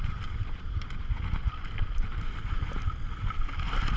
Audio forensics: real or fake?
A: real